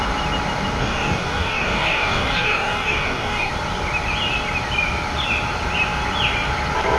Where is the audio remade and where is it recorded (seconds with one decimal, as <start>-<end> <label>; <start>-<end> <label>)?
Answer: 0.0-0.8 recorded; 0.8-3.5 remade; 3.5-7.0 recorded